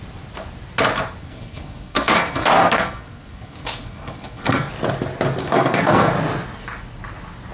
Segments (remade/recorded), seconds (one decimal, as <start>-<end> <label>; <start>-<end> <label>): 0.0-1.2 recorded; 1.2-4.7 remade; 4.7-5.4 recorded; 5.4-6.1 remade; 6.1-7.5 recorded